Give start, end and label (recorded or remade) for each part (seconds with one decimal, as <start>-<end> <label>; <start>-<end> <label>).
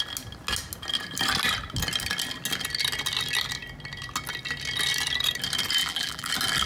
0.0-5.8 recorded; 5.8-6.3 remade; 6.3-6.7 recorded